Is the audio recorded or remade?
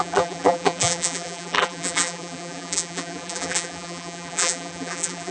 remade